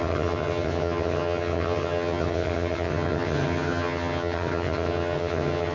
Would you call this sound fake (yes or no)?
yes